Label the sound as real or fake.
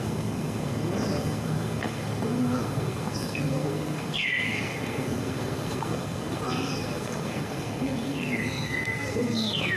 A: fake